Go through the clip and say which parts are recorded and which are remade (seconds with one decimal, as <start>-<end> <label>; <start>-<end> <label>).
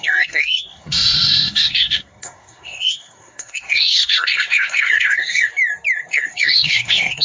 0.0-5.5 remade; 5.5-6.1 recorded; 6.1-7.2 remade